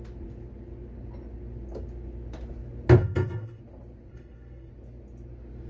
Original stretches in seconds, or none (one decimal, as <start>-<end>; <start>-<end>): 0.0-3.0; 3.6-4.1; 4.7-5.7